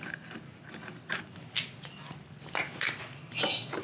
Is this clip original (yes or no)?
yes